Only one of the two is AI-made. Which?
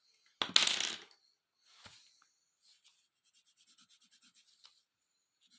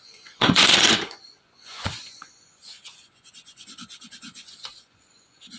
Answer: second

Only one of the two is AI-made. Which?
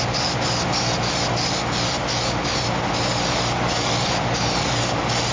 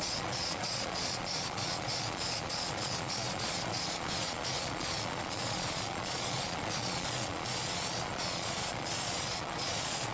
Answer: second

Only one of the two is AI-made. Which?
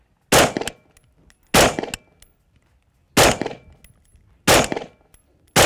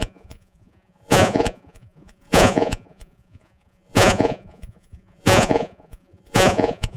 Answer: second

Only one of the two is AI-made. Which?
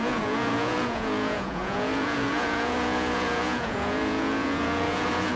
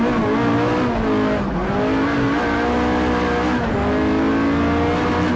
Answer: first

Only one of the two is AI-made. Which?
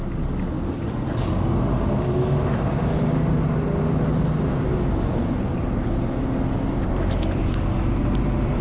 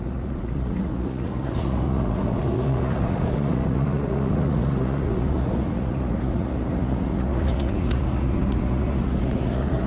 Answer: second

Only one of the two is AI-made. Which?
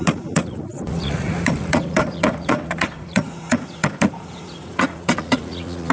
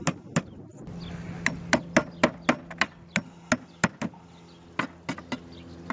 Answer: first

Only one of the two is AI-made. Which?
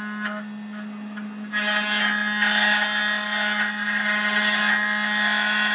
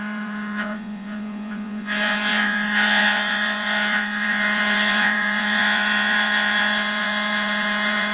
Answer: second